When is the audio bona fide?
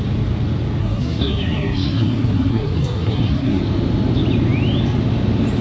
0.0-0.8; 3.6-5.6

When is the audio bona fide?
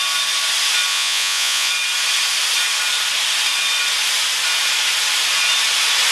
0.0-0.9; 1.7-6.1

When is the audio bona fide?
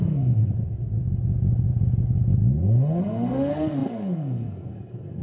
0.4-3.0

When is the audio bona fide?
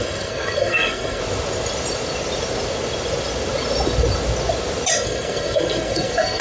1.2-4.9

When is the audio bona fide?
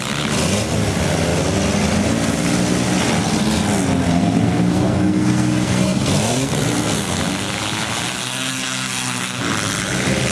0.0-4.0; 7.2-8.2; 9.4-10.3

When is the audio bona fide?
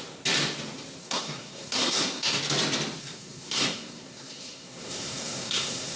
0.0-1.0; 2.4-3.0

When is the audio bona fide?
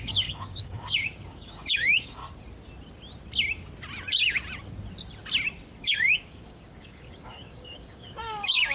2.2-5.8